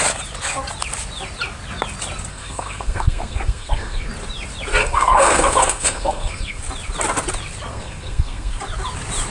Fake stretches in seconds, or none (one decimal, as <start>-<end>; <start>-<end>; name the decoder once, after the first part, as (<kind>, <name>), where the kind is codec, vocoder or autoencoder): 2.3-4.1 (codec, SNAC); 4.8-6.6; 7.7-8.6